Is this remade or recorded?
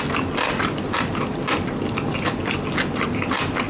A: recorded